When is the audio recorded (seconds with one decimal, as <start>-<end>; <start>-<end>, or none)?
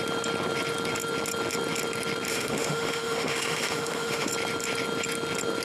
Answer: 0.0-2.3; 4.3-5.6